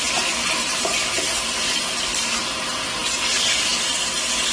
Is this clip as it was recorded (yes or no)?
yes